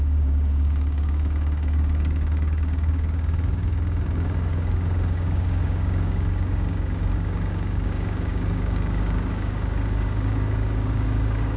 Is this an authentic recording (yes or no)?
no